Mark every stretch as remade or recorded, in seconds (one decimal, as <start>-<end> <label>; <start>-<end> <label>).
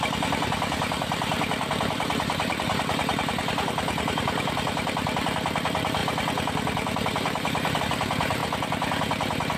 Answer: 0.0-6.0 remade; 6.0-7.8 recorded; 7.8-8.4 remade; 8.4-9.6 recorded